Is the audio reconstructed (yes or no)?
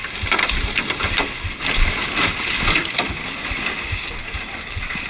no